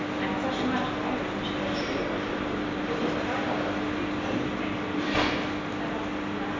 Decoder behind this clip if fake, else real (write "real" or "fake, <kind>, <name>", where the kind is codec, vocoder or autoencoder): real